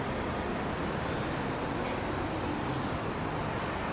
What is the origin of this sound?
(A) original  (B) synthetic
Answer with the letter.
A